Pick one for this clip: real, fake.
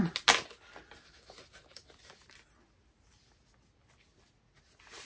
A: real